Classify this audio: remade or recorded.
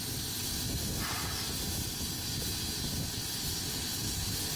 recorded